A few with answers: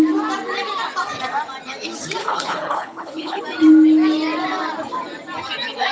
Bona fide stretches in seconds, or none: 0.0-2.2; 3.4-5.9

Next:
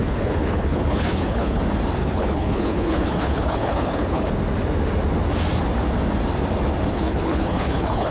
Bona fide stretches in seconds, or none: 1.6-2.0; 4.3-6.9

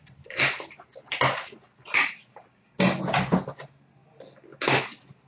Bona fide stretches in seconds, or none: 0.0-5.3

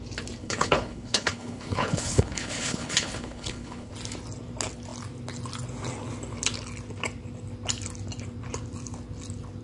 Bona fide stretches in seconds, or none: 0.0-0.4; 3.9-9.6

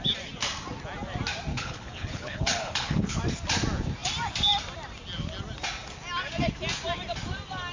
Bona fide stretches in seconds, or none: 0.0-1.5; 3.2-7.7

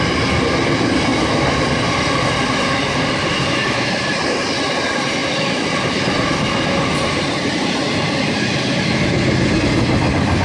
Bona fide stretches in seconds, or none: 0.0-10.4